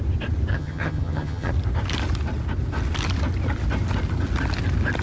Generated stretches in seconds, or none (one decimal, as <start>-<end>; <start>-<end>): 0.5-1.5